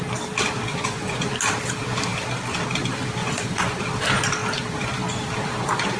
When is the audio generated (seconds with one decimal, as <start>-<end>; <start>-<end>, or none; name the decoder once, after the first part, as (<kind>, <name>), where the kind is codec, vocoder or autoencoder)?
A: 0.7-1.3 (vocoder, Vocos); 3.2-3.8